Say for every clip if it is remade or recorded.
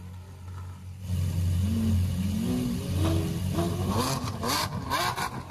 recorded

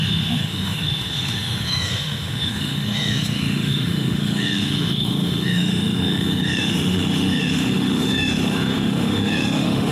remade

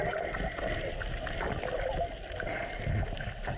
recorded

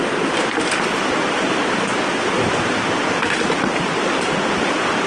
recorded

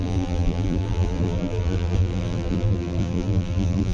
remade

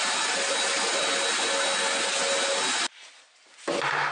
recorded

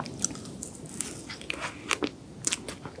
recorded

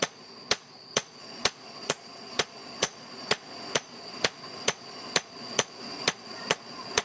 remade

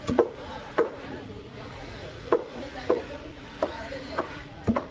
remade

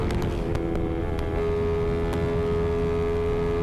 recorded